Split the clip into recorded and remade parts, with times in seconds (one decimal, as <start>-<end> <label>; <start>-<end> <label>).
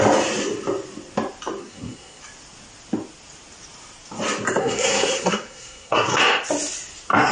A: 0.0-1.6 recorded; 1.6-2.2 remade; 2.2-4.6 recorded; 4.6-6.2 remade; 6.2-7.3 recorded